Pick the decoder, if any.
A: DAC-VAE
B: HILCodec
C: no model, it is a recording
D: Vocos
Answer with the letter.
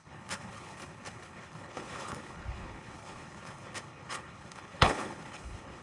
B